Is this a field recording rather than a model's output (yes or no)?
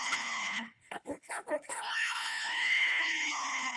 no